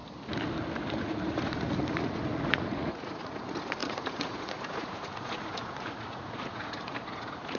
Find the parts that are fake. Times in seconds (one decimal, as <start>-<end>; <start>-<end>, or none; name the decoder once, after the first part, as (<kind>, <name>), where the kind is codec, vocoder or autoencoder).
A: 0.9-7.6 (vocoder, Vocos)